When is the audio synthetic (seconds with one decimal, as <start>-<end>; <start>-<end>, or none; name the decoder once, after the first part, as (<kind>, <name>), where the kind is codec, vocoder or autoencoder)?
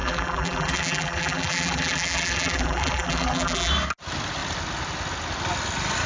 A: 0.0-3.7 (vocoder, BigVGAN v2)